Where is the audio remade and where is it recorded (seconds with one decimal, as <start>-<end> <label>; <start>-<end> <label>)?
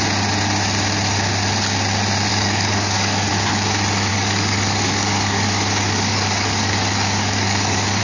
0.0-2.3 recorded; 2.3-3.3 remade; 3.3-4.1 recorded; 4.1-8.0 remade